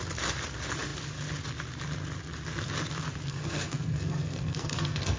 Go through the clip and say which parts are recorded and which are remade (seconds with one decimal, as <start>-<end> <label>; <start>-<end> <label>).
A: 0.0-3.3 recorded; 3.3-5.2 remade